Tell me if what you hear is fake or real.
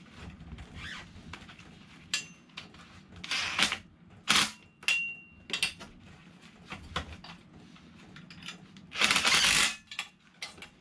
real